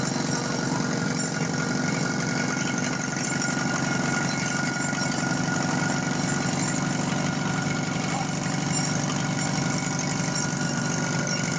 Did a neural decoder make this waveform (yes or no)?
no